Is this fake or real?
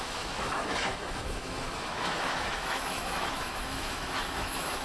fake